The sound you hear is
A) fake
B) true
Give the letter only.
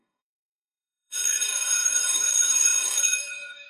A